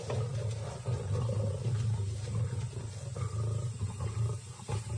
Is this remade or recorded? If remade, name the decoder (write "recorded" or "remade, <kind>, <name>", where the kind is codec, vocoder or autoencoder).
recorded